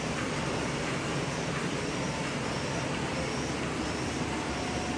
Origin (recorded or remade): recorded